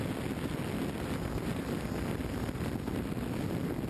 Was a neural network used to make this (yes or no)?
no